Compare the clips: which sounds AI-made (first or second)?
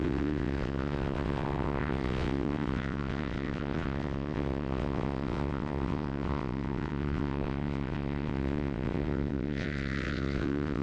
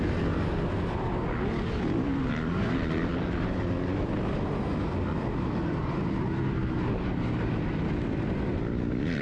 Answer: first